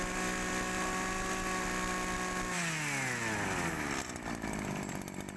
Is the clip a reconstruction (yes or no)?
no